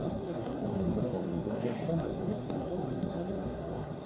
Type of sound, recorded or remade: remade